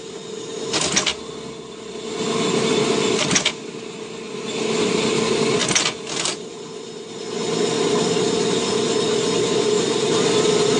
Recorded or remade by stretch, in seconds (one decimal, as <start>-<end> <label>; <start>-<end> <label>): 0.0-10.8 recorded

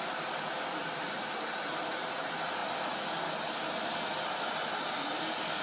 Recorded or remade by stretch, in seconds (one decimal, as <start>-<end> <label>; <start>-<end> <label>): 0.0-5.6 recorded

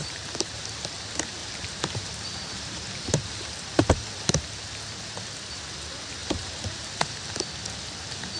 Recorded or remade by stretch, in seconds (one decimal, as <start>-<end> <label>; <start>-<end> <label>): 0.0-0.6 remade; 0.6-1.4 recorded; 1.4-4.3 remade; 4.3-6.2 recorded; 6.2-7.4 remade; 7.4-8.4 recorded

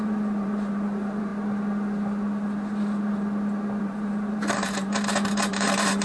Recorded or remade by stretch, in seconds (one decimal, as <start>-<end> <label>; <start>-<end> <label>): 0.0-1.3 remade; 1.3-3.8 recorded; 3.8-6.0 remade

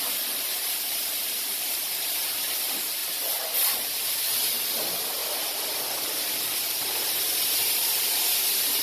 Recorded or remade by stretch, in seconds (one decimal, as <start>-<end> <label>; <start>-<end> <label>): 0.0-5.2 remade; 5.2-6.2 recorded; 6.2-8.8 remade

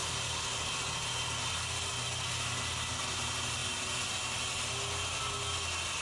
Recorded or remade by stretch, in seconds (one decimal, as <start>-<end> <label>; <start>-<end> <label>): 0.0-6.0 recorded

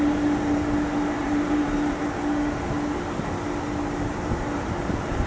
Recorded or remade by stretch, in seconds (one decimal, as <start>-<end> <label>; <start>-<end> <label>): 0.0-1.2 recorded; 1.2-2.0 remade; 2.0-4.1 recorded; 4.1-5.3 remade